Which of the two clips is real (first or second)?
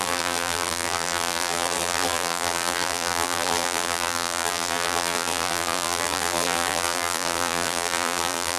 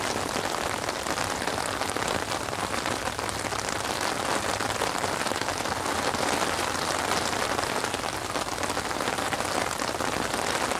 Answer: second